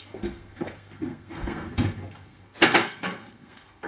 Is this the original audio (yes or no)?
no